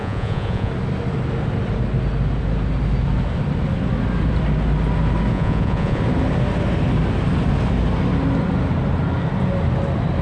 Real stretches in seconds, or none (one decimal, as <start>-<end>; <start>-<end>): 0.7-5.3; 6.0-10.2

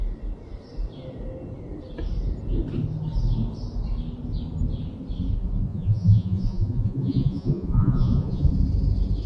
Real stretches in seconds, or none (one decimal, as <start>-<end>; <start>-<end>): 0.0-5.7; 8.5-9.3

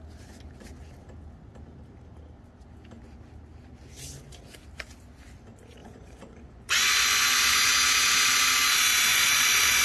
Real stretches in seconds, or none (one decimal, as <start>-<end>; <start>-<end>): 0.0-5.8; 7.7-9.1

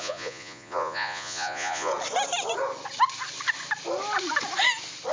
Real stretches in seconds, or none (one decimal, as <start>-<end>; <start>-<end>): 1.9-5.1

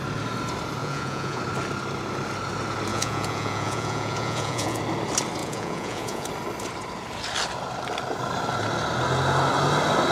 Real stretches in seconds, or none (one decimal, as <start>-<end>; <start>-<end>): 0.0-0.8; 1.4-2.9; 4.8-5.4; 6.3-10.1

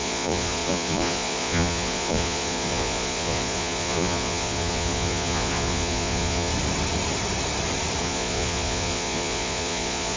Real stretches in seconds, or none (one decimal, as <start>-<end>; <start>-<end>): 6.5-8.0

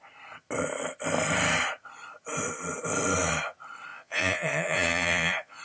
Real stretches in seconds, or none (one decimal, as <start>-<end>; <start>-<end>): 0.0-3.9